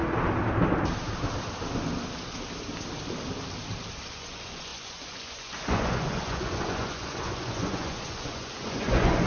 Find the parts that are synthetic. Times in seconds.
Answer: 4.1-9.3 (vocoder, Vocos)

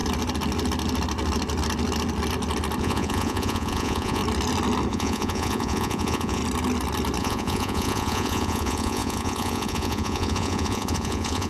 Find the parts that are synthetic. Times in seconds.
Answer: 2.8-4.2 (vocoder, Vocos); 4.9-6.4; 7.2-11.5

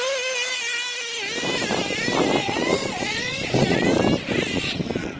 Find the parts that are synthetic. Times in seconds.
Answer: 2.4-4.0 (vocoder, Vocos); 4.5-5.2

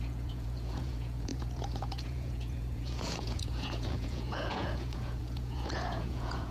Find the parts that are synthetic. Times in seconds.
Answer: 0.0-6.5 (vocoder, Vocos)